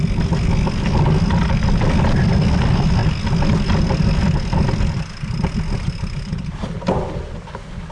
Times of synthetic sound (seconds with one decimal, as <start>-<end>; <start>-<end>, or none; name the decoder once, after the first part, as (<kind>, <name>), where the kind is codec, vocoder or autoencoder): none